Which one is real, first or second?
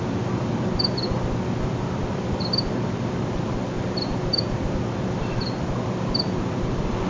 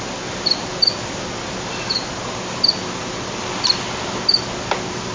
second